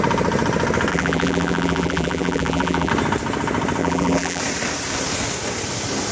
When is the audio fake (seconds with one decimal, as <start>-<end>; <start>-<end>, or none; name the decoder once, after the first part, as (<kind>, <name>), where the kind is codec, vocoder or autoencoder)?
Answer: 0.9-2.9 (vocoder, BigVGAN v2); 3.8-4.4